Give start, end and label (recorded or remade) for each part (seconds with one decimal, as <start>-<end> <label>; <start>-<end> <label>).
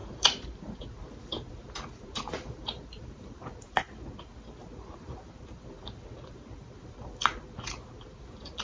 0.0-8.6 remade